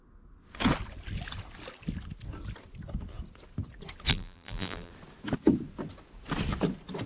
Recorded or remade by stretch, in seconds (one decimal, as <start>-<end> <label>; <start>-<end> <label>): 0.0-4.1 recorded; 4.1-4.9 remade; 4.9-7.1 recorded